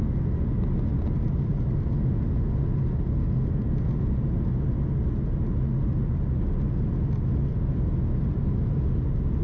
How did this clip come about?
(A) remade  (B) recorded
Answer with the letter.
B